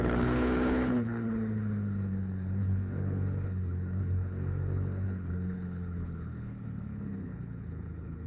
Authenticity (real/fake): fake